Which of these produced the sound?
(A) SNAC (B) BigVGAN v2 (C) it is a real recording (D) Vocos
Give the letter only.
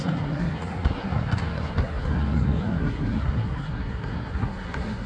A